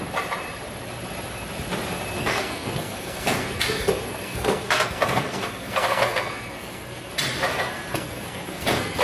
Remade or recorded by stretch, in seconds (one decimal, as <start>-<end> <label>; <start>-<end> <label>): 0.0-2.2 recorded; 2.2-7.1 remade; 7.1-7.5 recorded; 7.5-9.0 remade